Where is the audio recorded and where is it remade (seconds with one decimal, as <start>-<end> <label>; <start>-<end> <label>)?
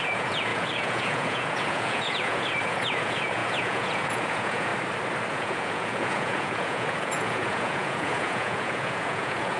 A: 0.0-4.7 remade; 4.7-5.3 recorded; 5.3-9.6 remade